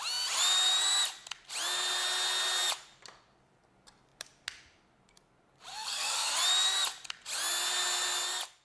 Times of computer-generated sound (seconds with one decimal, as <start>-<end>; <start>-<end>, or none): 5.7-6.3